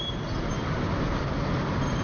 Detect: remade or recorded recorded